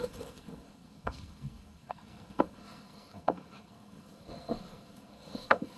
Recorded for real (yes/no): no